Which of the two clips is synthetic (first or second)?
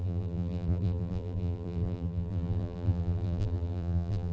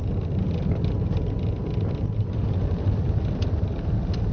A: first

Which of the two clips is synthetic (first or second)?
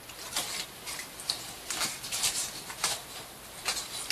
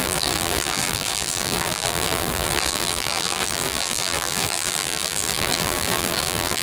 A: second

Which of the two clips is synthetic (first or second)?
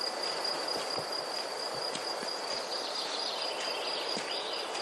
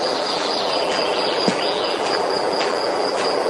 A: second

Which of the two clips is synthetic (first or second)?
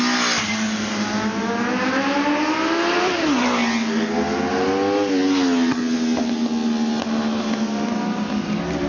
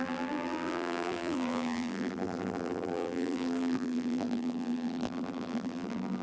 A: second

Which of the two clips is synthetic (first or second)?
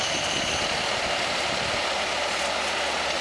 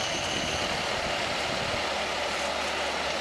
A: first